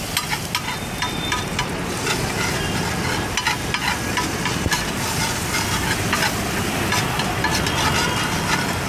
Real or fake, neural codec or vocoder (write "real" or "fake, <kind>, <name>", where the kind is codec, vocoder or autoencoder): real